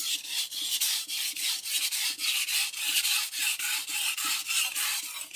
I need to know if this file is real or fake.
fake